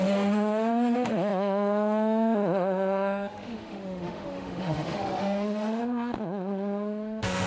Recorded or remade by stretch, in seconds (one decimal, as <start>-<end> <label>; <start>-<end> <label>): 0.0-7.5 remade